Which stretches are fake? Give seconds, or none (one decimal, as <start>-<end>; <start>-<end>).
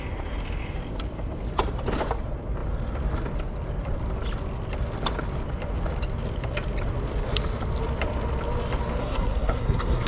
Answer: 9.0-10.1